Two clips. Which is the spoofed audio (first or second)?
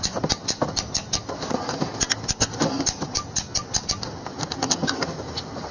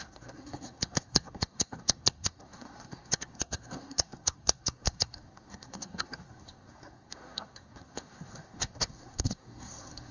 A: second